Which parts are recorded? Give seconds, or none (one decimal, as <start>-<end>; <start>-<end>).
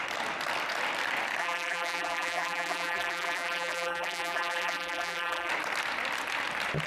0.0-1.4; 5.5-6.9